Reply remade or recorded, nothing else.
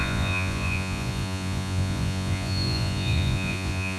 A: remade